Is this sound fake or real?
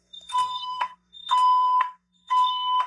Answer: fake